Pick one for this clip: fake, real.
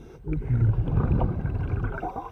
real